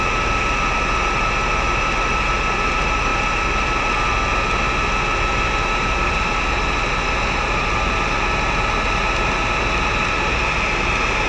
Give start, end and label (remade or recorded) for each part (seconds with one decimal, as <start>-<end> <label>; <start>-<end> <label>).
0.0-11.3 recorded